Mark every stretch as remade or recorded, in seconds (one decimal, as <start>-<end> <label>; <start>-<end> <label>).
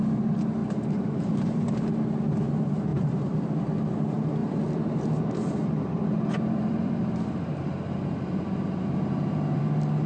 0.0-0.6 recorded; 0.6-1.7 remade; 1.7-2.9 recorded; 2.9-3.4 remade; 3.4-4.4 recorded; 4.4-9.6 remade; 9.6-10.1 recorded